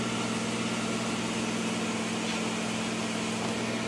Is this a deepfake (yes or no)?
no